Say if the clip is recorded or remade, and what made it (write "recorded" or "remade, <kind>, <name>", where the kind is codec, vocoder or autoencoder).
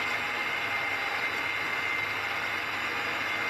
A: recorded